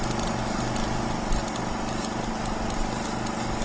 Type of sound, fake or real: real